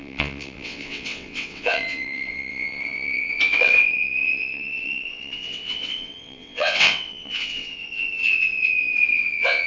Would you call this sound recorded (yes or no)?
no